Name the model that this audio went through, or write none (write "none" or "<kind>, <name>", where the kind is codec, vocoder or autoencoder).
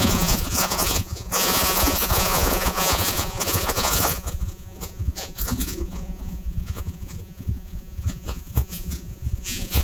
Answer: vocoder, Vocos